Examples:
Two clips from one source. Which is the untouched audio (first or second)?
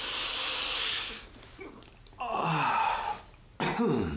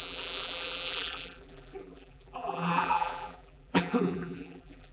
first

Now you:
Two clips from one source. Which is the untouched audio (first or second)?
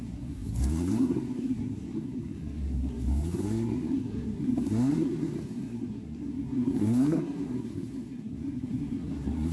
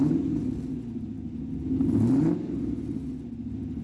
second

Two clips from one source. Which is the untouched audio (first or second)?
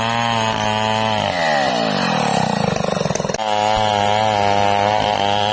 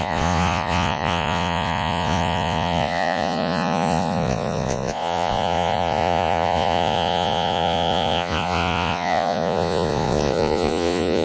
first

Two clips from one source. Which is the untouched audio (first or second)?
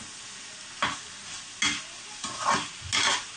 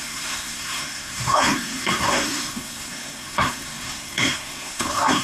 first